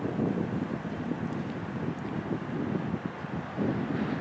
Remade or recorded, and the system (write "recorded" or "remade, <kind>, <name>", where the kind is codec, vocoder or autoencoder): recorded